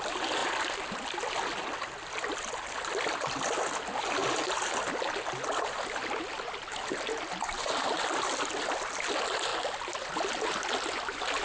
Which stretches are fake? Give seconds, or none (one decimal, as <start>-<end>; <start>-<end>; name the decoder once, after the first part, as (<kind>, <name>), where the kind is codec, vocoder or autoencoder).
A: none